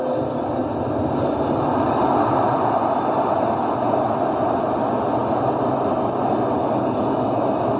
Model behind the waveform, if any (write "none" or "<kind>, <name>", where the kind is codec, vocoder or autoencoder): none